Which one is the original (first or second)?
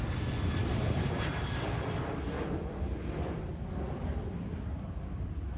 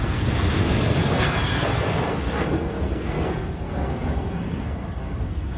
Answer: first